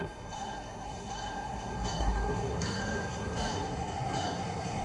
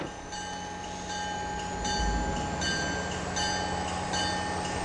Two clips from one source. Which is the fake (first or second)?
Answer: first